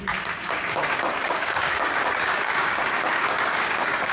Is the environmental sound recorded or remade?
remade